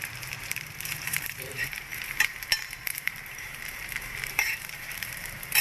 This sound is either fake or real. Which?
fake